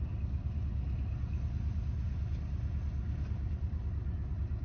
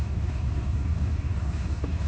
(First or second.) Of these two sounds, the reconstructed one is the second